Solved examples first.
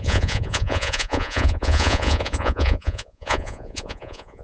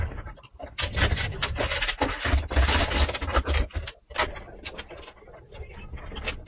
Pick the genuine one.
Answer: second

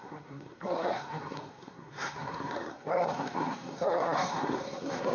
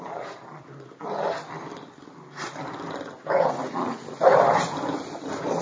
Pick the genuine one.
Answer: second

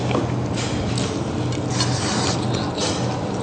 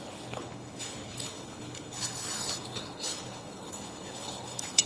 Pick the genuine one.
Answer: first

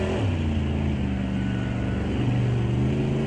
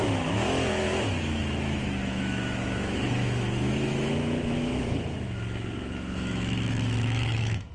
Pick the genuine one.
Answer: first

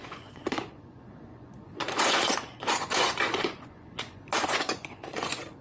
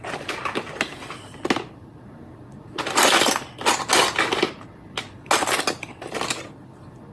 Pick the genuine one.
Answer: second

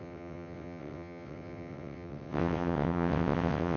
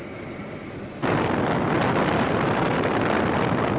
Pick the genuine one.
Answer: second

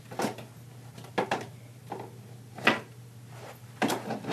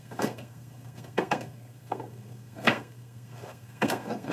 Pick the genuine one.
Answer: first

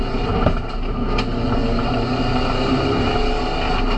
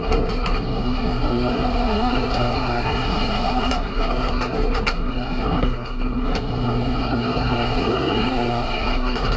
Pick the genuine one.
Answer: first